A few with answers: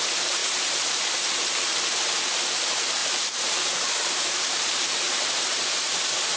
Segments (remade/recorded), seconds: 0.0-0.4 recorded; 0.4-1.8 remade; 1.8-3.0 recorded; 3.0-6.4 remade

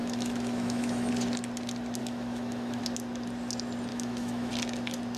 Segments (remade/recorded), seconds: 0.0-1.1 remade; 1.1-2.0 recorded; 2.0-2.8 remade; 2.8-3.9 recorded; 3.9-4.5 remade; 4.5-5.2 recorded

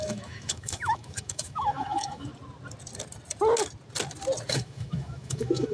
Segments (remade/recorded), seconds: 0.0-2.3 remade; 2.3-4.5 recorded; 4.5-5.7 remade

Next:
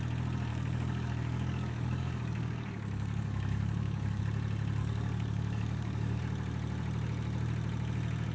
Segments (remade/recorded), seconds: 0.0-0.5 recorded; 0.5-4.2 remade; 4.2-4.8 recorded; 4.8-6.2 remade; 6.2-8.3 recorded

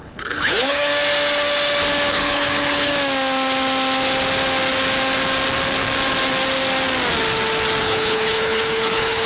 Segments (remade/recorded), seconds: 0.0-0.9 remade; 0.9-2.1 recorded; 2.1-2.9 remade; 2.9-7.8 recorded; 7.8-9.3 remade

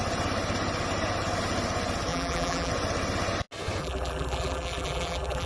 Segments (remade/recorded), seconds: 0.0-2.1 recorded; 2.1-2.7 remade; 2.7-3.8 recorded; 3.8-5.5 remade